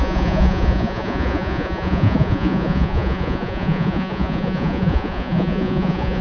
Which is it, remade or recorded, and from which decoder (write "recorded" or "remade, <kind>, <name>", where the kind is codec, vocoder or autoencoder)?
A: remade, vocoder, Vocos